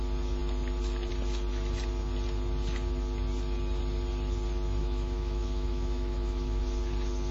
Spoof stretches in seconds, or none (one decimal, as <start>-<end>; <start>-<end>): 4.8-6.6